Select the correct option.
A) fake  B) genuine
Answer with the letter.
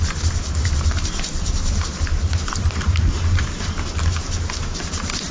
A